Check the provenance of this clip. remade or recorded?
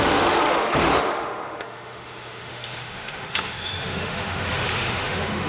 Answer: remade